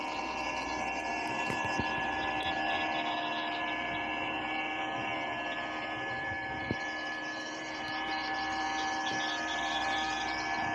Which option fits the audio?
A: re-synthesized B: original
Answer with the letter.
A